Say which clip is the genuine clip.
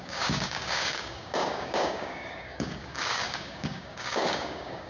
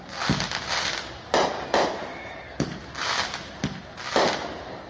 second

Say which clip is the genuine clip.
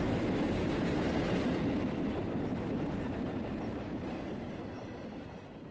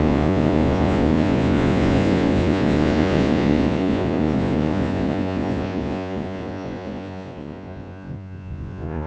first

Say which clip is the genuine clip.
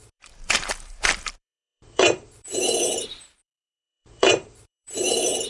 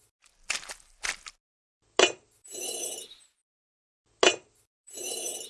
second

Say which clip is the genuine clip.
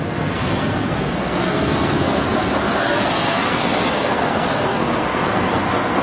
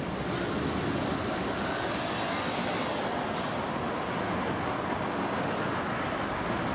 second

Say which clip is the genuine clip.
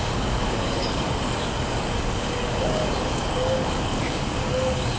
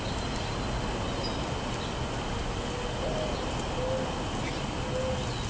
second